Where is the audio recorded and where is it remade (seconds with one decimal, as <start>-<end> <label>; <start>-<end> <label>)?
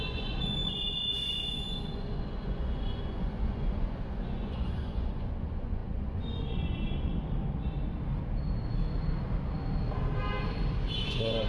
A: 0.0-7.1 remade; 7.1-11.0 recorded; 11.0-11.5 remade